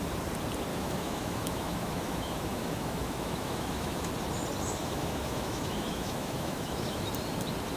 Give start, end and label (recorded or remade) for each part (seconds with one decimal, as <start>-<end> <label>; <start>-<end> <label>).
0.0-0.7 recorded; 0.7-4.1 remade; 4.1-4.8 recorded; 4.8-7.1 remade; 7.1-7.8 recorded